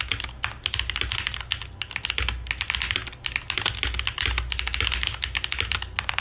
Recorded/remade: recorded